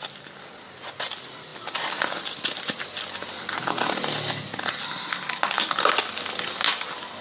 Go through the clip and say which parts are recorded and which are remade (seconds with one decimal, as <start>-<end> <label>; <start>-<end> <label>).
0.0-7.2 recorded